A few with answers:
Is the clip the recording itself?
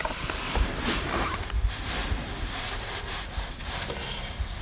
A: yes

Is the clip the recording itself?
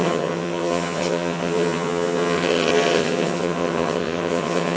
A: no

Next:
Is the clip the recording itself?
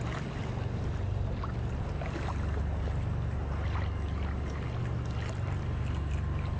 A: yes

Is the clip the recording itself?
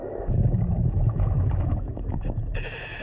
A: no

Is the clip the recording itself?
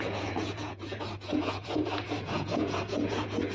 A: no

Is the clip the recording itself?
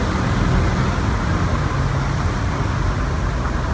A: yes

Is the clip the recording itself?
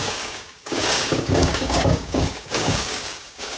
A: no